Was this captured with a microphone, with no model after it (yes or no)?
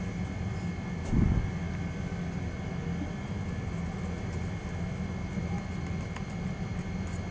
yes